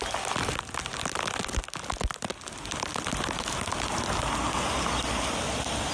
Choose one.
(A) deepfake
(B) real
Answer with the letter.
B